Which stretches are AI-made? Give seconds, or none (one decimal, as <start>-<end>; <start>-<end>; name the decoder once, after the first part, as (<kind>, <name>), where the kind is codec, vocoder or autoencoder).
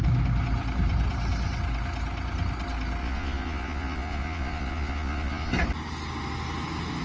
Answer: 3.0-5.5 (vocoder, Vocos)